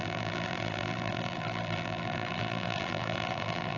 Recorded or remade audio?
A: remade